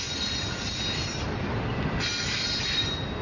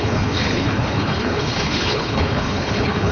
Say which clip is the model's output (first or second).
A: second